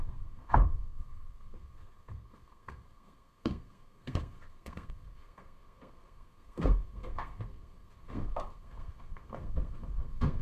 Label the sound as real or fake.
fake